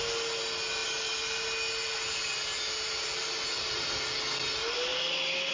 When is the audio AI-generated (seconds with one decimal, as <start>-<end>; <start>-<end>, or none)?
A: none